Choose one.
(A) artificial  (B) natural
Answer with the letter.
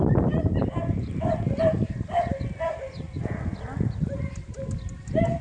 B